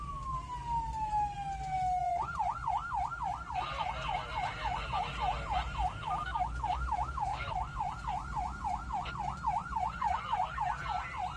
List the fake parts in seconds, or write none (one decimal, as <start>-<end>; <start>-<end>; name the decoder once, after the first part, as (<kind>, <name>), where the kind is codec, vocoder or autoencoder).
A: 2.0-2.7 (vocoder, Vocos); 9.6-10.6